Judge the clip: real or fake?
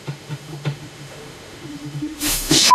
fake